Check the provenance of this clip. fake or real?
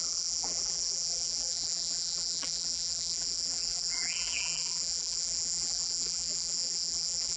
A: fake